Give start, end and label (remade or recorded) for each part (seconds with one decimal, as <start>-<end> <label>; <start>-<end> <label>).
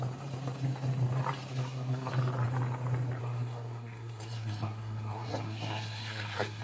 0.0-1.5 recorded; 1.5-2.1 remade; 2.1-3.2 recorded; 3.2-6.6 remade